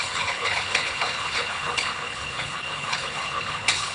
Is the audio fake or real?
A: fake